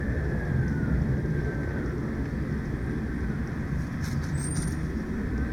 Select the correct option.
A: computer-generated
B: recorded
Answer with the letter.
B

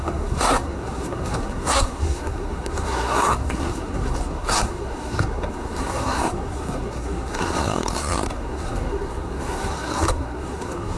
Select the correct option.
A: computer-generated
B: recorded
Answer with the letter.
A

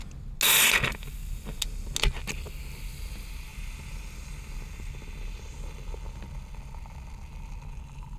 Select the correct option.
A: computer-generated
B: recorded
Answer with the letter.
B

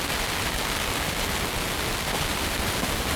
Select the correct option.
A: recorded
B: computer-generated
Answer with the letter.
A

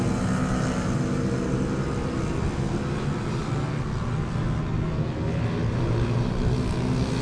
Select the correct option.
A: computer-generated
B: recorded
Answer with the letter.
B